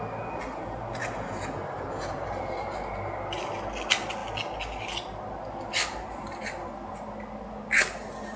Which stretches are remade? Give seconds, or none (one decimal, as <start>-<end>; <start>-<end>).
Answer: none